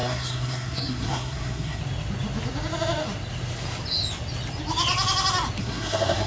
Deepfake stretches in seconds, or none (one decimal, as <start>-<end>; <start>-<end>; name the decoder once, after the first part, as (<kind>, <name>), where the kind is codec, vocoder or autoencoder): 0.0-1.8 (codec, SNAC); 5.6-6.3